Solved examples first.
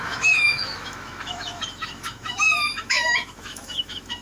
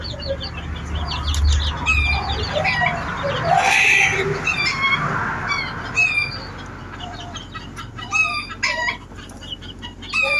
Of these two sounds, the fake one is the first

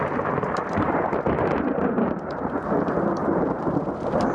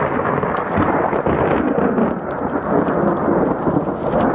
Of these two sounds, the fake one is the first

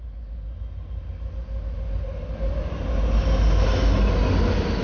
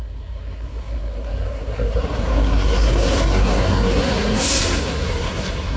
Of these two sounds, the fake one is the second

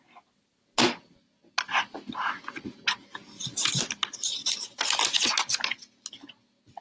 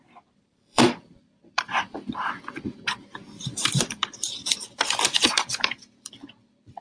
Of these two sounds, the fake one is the second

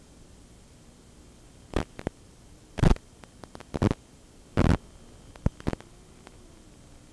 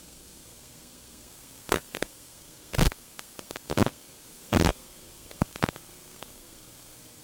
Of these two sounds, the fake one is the second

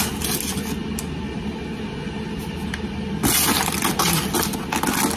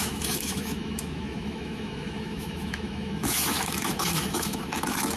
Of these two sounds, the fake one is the second